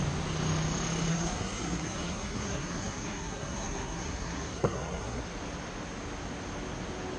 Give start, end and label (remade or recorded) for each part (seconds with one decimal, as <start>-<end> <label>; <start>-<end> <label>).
0.0-1.1 recorded; 1.1-5.2 remade; 5.2-7.2 recorded